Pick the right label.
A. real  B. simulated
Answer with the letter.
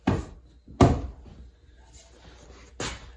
A